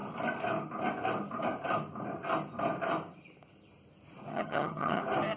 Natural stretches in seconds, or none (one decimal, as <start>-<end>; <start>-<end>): 0.0-4.3; 5.0-5.4